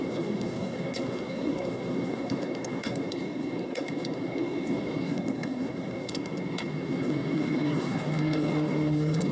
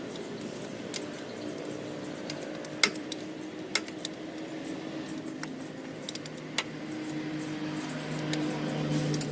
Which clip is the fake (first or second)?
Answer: first